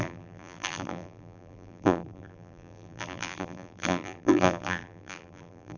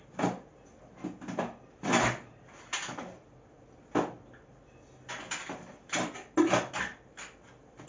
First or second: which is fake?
first